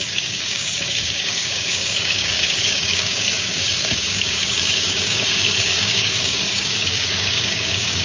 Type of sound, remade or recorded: remade